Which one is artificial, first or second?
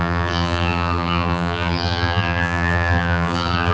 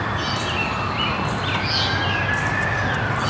first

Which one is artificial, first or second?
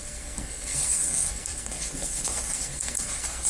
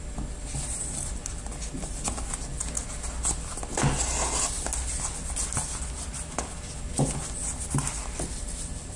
first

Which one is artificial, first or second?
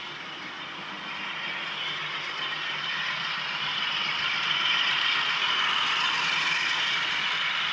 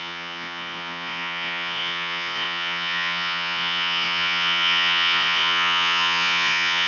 second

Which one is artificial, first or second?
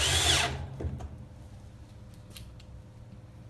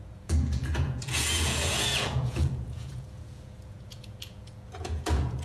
second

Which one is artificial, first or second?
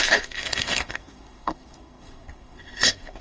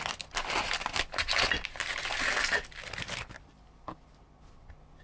first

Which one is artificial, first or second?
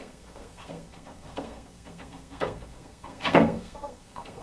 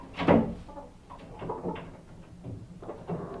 first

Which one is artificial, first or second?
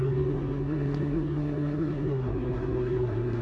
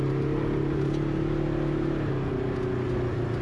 first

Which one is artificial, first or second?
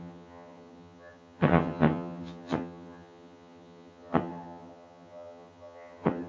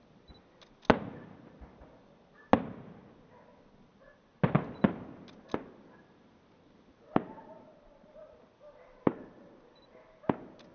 first